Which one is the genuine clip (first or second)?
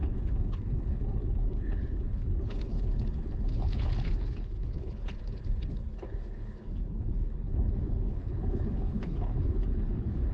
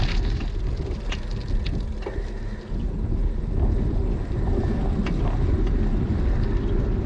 second